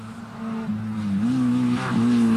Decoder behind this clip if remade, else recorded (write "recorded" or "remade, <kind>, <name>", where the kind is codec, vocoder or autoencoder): recorded